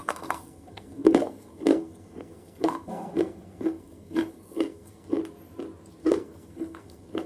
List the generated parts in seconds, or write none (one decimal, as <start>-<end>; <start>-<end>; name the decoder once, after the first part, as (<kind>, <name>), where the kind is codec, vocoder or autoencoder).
0.0-5.2 (codec, SNAC); 6.0-7.3